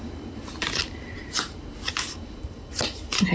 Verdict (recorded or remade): recorded